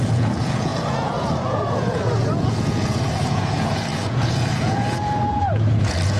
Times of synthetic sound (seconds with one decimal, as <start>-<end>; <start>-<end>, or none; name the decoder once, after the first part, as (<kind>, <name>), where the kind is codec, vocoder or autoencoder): 0.0-6.2 (vocoder, Vocos)